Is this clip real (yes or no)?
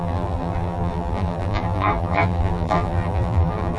no